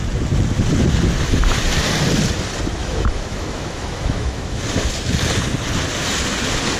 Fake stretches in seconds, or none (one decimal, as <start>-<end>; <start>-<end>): 2.8-4.6